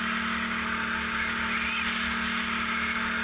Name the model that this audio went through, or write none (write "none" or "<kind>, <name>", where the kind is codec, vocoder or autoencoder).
none